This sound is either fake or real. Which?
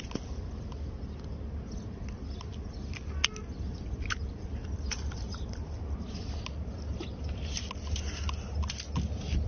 real